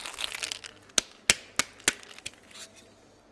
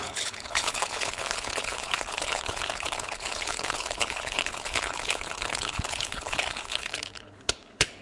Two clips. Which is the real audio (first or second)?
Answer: first